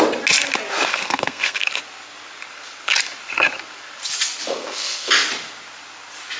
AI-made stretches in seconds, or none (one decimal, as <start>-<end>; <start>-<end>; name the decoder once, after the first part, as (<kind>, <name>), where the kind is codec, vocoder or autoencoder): 0.9-1.7 (codec, SNAC); 4.5-5.1